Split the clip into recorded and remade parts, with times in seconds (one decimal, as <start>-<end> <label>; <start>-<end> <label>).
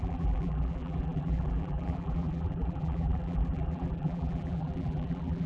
0.0-5.5 remade